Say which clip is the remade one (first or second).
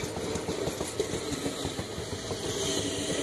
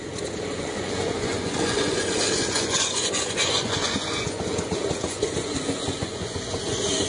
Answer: second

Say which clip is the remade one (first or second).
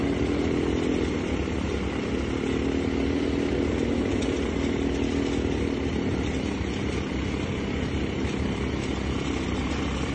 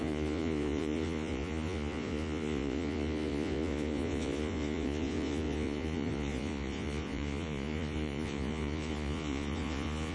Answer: second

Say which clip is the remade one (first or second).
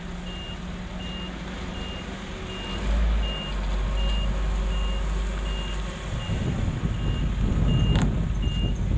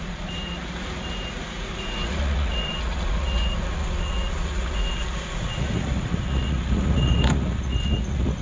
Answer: second